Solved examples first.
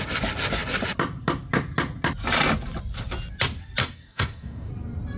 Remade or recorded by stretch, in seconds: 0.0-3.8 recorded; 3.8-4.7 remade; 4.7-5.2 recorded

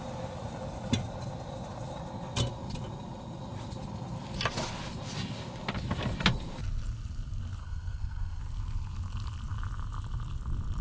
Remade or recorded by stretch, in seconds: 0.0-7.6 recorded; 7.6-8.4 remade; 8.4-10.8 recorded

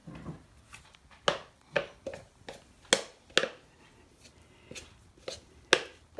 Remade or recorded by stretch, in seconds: 0.0-6.2 recorded